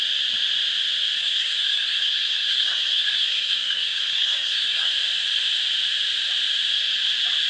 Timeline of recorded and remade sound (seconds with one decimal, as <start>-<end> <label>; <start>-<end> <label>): 0.0-1.2 recorded; 1.2-4.9 remade; 4.9-7.5 recorded